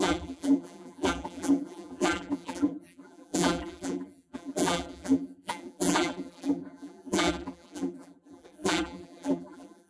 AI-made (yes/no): yes